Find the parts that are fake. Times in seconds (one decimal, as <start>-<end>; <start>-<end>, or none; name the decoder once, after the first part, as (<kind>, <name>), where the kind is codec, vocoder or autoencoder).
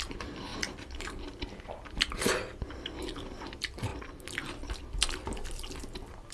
0.0-3.9 (vocoder, BigVGAN v2); 4.8-6.3